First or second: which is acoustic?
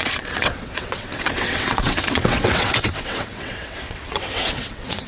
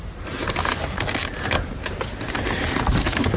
second